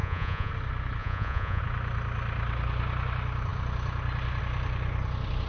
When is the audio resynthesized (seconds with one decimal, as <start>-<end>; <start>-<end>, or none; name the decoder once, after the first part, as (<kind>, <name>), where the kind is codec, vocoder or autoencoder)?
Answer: 0.0-0.5 (vocoder, Vocos); 1.0-1.6